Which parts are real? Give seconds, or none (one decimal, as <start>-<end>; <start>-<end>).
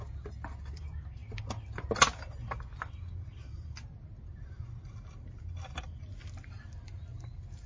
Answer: 0.0-7.7